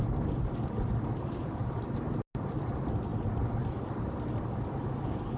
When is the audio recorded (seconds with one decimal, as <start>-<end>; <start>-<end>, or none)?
0.0-5.4